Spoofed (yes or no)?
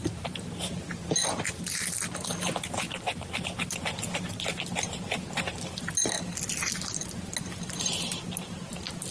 no